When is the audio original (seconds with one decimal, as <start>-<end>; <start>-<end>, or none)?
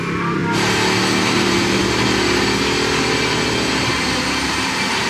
0.4-1.2; 1.8-3.8